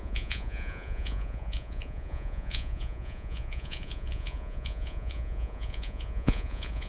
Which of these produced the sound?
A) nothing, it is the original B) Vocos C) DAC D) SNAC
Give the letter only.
B